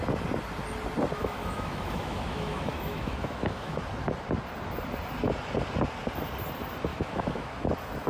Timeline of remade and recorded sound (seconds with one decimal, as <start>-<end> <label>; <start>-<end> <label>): 0.0-1.2 recorded; 1.2-3.8 remade; 3.8-6.9 recorded; 6.9-7.5 remade; 7.5-8.1 recorded